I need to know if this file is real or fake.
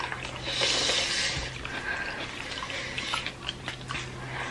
real